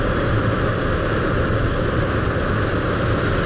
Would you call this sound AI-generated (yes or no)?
no